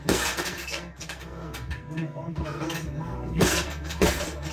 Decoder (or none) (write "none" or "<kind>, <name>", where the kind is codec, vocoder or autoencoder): codec, SNAC